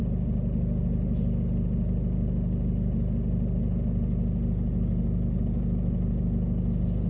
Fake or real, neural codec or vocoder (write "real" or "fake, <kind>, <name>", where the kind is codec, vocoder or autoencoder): real